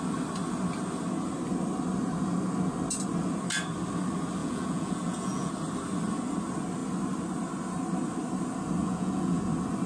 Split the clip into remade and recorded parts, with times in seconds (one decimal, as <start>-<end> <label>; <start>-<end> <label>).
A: 0.0-4.4 recorded; 4.4-5.5 remade; 5.5-8.8 recorded; 8.8-9.4 remade; 9.4-9.9 recorded